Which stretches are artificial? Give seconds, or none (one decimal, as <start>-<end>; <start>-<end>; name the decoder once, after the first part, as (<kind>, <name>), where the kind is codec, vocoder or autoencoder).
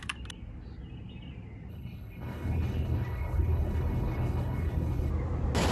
1.7-5.1 (codec, HILCodec)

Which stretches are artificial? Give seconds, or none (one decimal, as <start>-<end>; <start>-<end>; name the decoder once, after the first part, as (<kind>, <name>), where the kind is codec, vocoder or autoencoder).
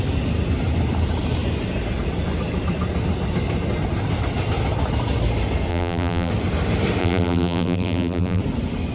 5.7-6.3 (vocoder, BigVGAN v2); 7.0-8.4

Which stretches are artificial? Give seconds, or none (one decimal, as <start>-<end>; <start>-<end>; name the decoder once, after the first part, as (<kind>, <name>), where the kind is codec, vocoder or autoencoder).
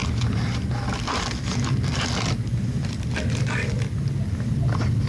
none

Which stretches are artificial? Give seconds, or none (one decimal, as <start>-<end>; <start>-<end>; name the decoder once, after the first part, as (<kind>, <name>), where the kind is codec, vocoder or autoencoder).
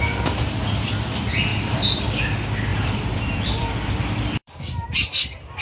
1.5-2.0 (vocoder, BigVGAN v2); 2.7-4.7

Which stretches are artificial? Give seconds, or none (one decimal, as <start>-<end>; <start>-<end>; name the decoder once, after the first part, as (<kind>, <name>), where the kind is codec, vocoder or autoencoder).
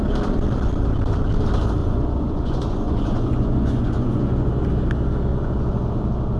1.8-4.7 (vocoder, Vocos); 5.3-5.9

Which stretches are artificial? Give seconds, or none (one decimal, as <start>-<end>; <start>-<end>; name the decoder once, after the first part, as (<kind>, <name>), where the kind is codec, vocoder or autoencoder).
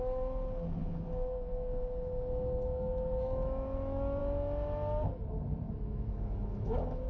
0.0-4.2 (autoencoder, DAC-VAE); 5.7-7.1